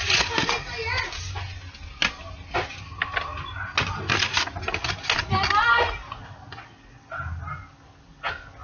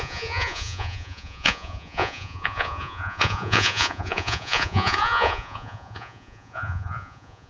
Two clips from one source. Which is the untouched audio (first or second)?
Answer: first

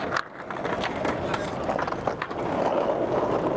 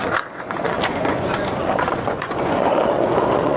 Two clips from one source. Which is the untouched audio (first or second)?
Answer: first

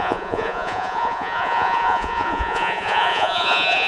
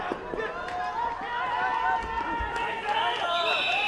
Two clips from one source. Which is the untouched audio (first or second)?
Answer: second